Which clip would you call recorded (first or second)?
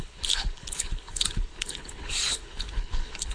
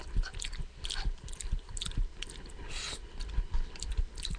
second